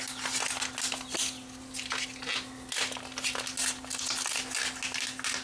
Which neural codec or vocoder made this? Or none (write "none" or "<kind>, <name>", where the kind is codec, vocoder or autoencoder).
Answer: none